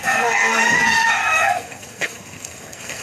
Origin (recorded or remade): remade